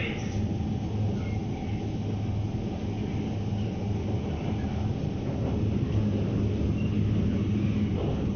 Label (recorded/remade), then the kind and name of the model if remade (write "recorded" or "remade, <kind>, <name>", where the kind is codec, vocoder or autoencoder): recorded